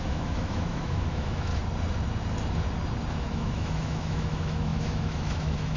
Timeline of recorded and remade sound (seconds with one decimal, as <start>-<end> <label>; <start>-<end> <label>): 0.0-1.5 remade; 1.5-3.1 recorded; 3.1-5.8 remade